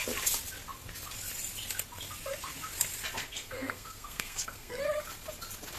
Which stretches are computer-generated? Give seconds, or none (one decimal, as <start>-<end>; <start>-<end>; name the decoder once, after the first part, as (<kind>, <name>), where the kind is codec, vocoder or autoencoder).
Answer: 3.2-4.8 (codec, SNAC)